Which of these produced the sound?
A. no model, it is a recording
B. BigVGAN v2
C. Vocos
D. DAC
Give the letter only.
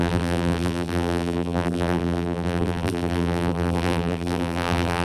B